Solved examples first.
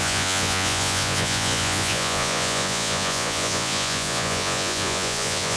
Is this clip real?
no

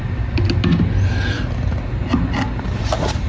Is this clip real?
yes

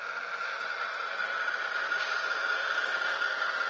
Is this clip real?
yes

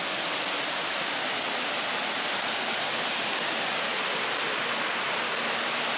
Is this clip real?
yes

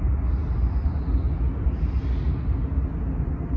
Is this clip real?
yes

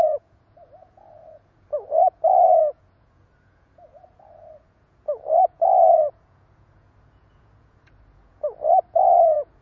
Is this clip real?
no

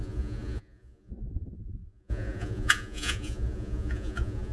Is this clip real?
no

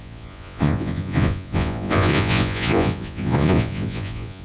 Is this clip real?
no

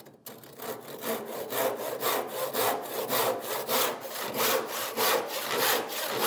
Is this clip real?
yes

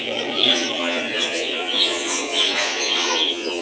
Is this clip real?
no